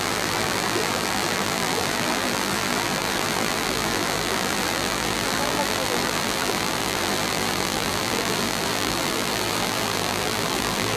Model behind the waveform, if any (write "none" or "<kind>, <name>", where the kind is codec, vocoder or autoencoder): vocoder, BigVGAN v2